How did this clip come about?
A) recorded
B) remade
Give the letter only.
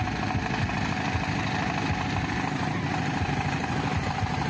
A